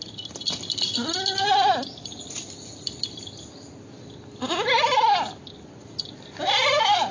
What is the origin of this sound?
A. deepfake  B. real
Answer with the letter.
B